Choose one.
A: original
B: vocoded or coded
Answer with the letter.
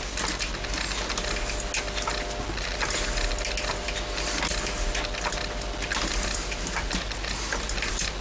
A